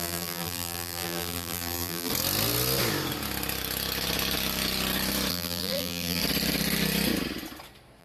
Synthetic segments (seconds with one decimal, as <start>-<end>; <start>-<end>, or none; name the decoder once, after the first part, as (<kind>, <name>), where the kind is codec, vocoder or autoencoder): 0.0-2.1 (vocoder, BigVGAN v2); 5.3-6.2